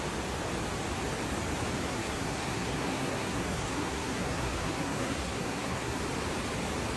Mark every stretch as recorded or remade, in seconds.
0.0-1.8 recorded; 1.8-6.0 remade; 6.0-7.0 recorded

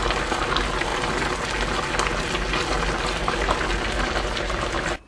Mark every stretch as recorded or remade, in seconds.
0.0-5.1 recorded